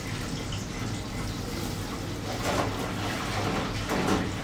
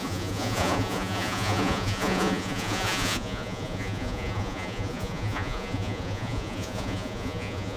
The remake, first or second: second